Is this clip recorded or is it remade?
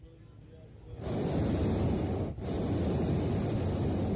recorded